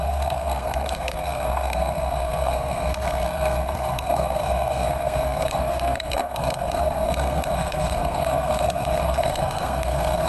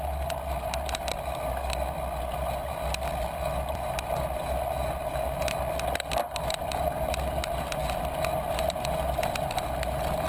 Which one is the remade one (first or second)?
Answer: first